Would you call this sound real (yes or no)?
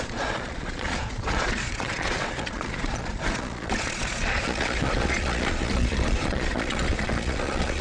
no